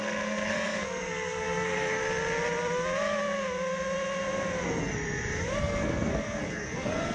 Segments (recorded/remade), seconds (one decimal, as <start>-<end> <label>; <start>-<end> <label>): 0.0-2.0 remade; 2.0-5.6 recorded; 5.6-7.1 remade